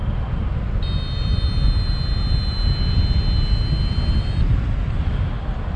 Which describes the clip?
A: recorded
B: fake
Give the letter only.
A